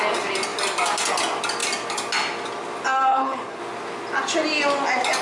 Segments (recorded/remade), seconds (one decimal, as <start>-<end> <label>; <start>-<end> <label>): 0.0-3.1 recorded; 3.1-3.6 remade; 3.6-5.2 recorded